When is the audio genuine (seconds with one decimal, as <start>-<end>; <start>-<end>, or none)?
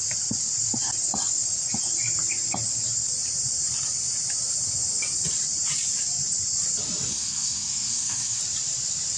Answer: 0.0-7.1; 8.4-9.2